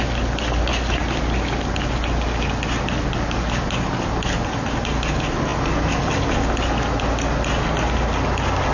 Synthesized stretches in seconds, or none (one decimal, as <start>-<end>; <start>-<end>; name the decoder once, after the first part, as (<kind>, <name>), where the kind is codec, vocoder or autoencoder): none